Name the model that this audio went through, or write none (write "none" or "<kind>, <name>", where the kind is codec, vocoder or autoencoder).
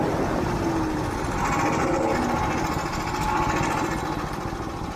none